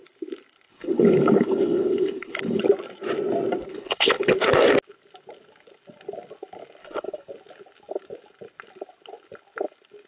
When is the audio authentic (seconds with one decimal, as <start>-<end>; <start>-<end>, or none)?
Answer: 0.0-0.7; 2.6-3.7; 4.3-6.8; 7.3-10.1